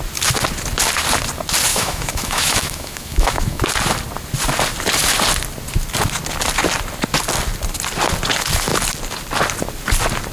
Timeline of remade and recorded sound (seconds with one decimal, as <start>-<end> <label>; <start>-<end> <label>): 0.0-1.7 recorded; 1.7-3.6 remade; 3.6-10.3 recorded